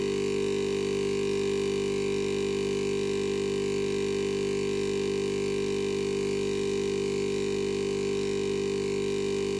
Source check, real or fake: real